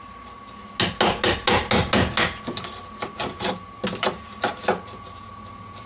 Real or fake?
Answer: real